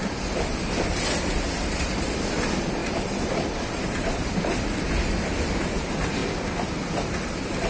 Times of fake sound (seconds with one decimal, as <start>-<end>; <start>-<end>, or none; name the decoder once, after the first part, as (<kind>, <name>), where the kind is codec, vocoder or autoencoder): 0.0-6.2 (vocoder, BigVGAN v2); 6.9-7.7